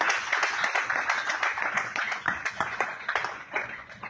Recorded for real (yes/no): no